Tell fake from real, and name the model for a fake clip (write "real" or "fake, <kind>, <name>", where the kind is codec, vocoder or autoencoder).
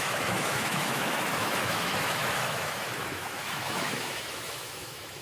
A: fake, autoencoder, DAC-VAE